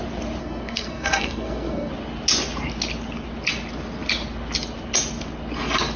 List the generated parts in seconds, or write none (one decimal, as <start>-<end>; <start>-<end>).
0.4-1.9